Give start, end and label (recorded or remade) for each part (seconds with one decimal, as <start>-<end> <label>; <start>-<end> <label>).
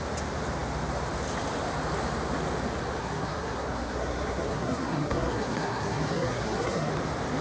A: 0.0-3.0 recorded; 3.0-6.9 remade; 6.9-7.4 recorded